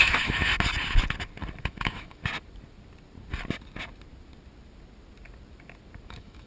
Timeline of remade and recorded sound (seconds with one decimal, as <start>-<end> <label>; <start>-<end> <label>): 0.0-0.5 remade; 0.5-1.6 recorded; 1.6-2.2 remade; 2.2-6.1 recorded; 6.1-6.5 remade